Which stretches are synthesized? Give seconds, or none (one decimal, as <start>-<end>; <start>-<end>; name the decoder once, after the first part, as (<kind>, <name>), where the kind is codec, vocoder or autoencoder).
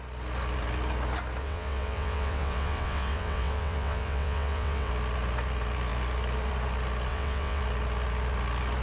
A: 1.4-4.9 (vocoder, WaveNeXt); 7.1-7.6